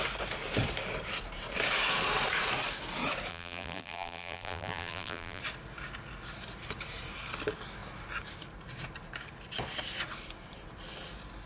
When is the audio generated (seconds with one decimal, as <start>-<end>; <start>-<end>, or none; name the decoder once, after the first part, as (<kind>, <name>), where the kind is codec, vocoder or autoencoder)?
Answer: 3.3-5.4 (vocoder, BigVGAN v2)